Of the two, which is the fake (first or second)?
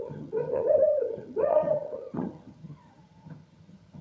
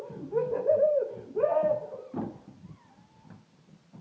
first